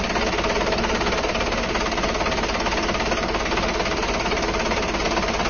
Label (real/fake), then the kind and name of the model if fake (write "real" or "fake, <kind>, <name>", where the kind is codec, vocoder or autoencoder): real